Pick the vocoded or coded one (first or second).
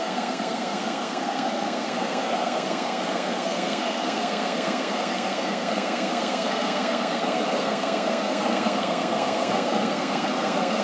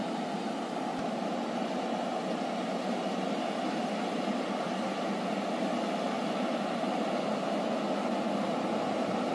first